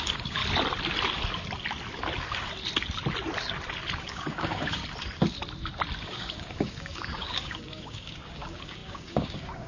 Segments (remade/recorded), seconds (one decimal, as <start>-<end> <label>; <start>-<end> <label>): 0.0-0.4 remade; 0.4-4.0 recorded; 4.0-4.8 remade; 4.8-6.0 recorded; 6.0-9.7 remade